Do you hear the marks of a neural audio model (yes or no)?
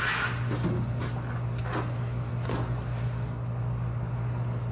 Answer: no